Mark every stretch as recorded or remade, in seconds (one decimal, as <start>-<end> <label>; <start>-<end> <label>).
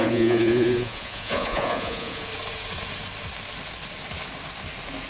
0.0-2.3 remade; 2.3-5.1 recorded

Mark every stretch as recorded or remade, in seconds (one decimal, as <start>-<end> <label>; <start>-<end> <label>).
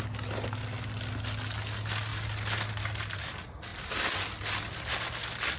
0.0-5.6 recorded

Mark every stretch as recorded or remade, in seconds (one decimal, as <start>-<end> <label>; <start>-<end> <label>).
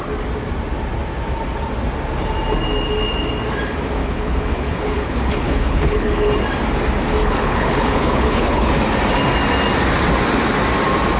0.0-4.0 recorded; 4.0-6.3 remade; 6.3-7.2 recorded; 7.2-8.7 remade; 8.7-11.2 recorded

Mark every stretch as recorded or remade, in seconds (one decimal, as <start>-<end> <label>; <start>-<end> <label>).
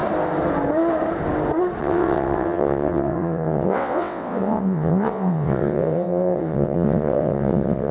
0.0-1.8 recorded; 1.8-7.9 remade